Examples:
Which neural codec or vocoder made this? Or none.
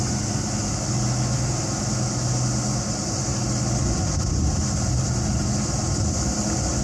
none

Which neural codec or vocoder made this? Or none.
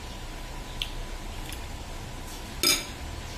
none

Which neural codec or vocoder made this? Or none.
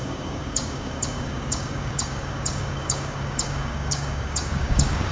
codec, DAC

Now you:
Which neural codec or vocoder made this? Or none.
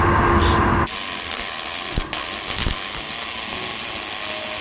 none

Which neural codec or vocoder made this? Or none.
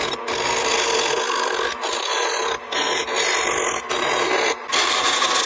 none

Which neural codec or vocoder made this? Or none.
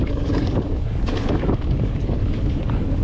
codec, DAC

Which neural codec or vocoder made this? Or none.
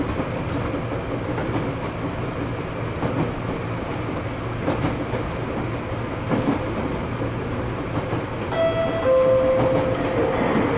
none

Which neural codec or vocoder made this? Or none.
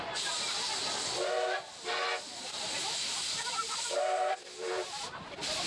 none